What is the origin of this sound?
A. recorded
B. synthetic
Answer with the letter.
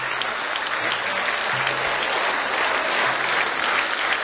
A